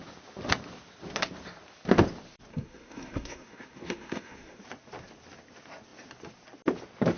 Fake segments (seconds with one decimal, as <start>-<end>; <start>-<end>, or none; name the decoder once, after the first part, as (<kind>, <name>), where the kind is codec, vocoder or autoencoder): 2.5-4.6 (codec, SNAC)